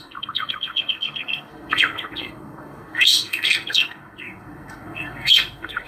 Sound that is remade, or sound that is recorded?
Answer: remade